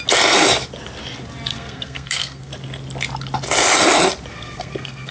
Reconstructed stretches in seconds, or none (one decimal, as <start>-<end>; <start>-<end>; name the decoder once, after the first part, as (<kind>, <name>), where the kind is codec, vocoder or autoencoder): 1.5-2.5 (codec, SNAC); 4.3-5.1